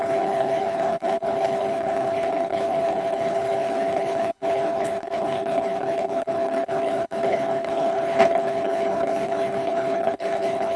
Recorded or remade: remade